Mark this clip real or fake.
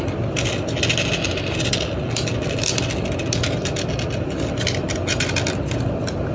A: real